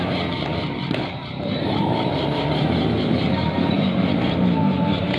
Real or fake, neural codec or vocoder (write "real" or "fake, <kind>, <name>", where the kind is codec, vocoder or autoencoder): fake, vocoder, BigVGAN v2